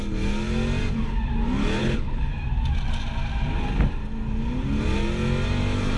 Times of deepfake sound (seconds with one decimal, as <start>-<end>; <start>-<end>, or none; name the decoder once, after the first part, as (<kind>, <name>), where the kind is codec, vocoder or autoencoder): 1.8-2.3 (codec, HILCodec)